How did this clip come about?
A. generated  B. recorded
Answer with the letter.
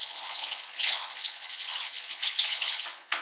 A